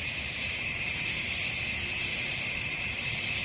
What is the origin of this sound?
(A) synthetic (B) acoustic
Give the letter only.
A